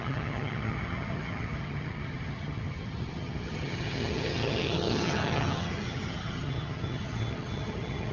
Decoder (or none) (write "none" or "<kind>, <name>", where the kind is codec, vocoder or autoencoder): vocoder, HiFi-GAN